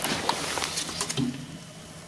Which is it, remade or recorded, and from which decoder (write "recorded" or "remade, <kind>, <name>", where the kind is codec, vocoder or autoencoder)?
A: recorded